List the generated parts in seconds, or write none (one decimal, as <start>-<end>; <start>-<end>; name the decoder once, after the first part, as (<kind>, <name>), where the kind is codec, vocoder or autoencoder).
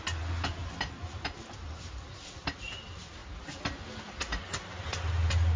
none